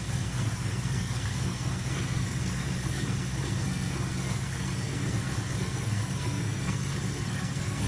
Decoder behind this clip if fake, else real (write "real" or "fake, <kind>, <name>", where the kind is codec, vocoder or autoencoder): fake, codec, SNAC